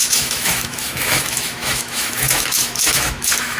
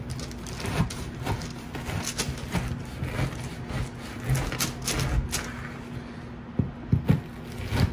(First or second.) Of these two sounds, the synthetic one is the first